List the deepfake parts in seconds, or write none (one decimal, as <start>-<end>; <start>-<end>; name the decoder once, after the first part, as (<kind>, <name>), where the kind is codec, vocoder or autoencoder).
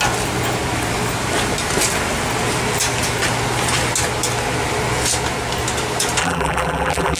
6.2-7.2 (vocoder, BigVGAN v2)